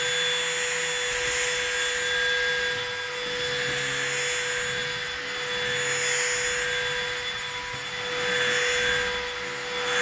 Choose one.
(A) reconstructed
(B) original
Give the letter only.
B